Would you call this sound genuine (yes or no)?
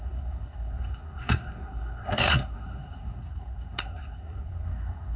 no